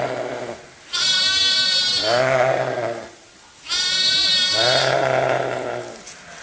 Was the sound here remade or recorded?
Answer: recorded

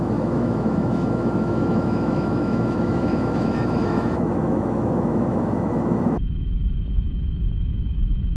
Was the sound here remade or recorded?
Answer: remade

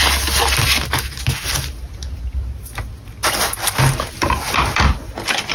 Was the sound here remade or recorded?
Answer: recorded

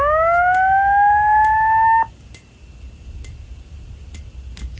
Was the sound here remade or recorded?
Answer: recorded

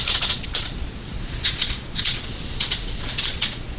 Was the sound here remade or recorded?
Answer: remade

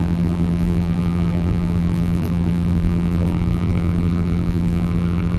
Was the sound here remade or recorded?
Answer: remade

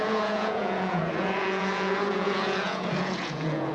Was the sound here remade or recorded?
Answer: remade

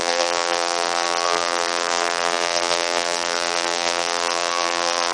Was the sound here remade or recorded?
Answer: remade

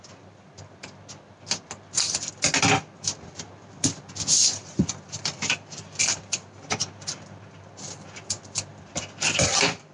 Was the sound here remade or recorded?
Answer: recorded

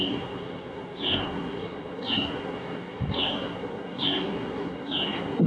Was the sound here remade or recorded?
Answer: remade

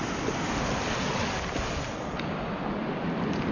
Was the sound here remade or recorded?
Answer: recorded